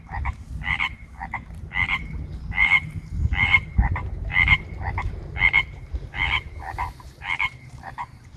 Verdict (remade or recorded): remade